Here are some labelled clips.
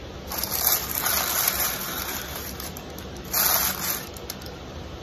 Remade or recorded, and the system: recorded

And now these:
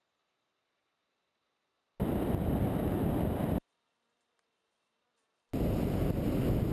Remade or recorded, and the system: recorded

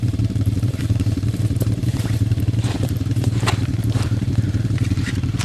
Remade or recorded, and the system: remade, vocoder, BigVGAN v2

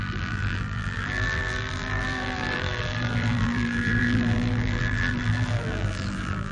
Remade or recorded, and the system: remade, vocoder, BigVGAN v2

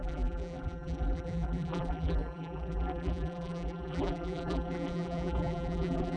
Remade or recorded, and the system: remade, vocoder, BigVGAN v2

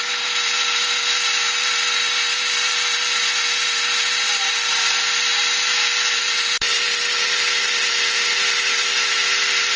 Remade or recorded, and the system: remade, vocoder, BigVGAN v2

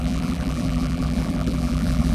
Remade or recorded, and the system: remade, vocoder, BigVGAN v2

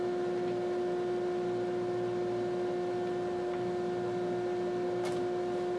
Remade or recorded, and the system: recorded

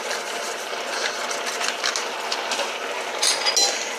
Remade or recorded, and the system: recorded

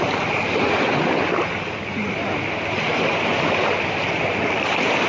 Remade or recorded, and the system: recorded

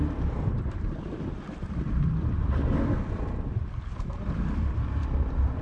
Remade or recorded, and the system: remade, vocoder, BigVGAN v2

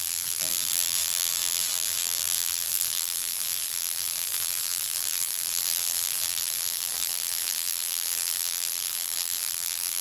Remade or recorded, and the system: remade, vocoder, BigVGAN v2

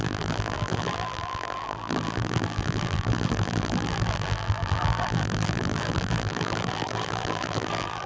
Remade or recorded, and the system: remade, vocoder, BigVGAN v2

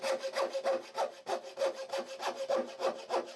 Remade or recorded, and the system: recorded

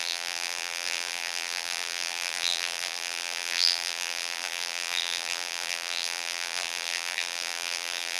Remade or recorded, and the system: remade, vocoder, BigVGAN v2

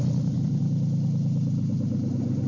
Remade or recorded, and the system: recorded